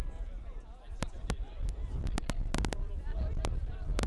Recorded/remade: recorded